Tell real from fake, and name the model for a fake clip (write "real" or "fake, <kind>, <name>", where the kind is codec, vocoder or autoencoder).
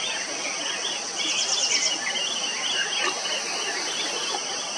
real